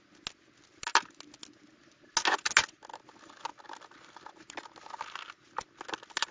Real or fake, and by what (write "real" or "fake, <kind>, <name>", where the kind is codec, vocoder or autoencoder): real